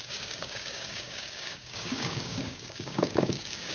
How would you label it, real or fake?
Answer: fake